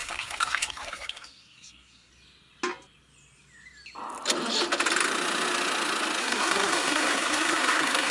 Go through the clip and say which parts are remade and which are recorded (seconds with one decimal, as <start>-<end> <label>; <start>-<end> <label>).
0.0-2.1 remade; 2.1-6.2 recorded; 6.2-8.1 remade